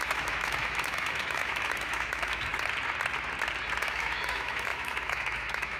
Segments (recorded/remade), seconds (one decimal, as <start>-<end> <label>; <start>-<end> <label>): 0.0-2.5 remade; 2.5-3.8 recorded; 3.8-5.8 remade